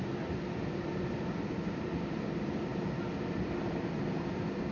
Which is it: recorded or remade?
recorded